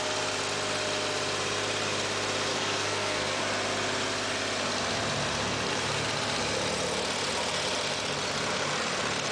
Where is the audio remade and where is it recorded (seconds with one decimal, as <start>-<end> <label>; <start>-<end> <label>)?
0.0-2.5 recorded; 2.5-3.4 remade; 3.4-9.3 recorded